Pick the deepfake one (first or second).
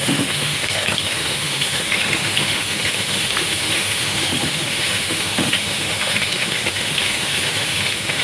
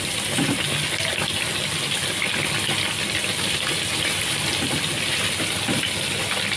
first